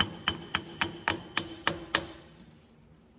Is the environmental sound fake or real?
fake